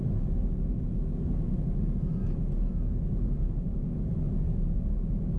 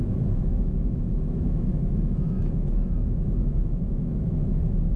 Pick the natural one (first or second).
first